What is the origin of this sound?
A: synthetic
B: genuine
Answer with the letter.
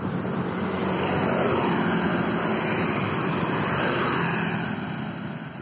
B